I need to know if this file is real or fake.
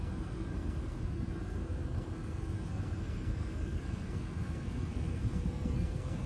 fake